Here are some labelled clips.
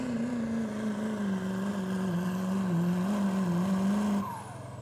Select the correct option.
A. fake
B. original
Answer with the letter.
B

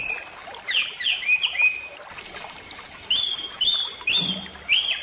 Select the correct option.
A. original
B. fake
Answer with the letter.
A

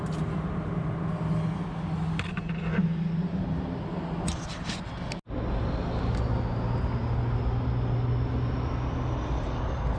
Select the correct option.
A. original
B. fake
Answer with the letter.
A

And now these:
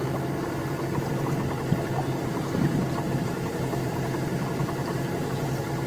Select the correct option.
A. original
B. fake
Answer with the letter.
B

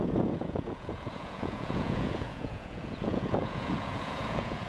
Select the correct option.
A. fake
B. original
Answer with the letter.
A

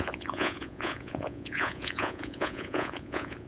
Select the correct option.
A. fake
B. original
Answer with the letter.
A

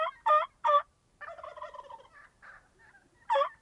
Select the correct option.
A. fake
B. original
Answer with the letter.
B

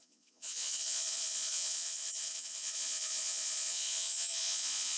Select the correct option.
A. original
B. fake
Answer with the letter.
B